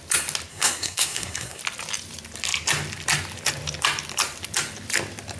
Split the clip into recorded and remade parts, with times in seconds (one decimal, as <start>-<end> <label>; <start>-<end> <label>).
0.0-0.5 recorded; 0.5-1.6 remade; 1.6-5.4 recorded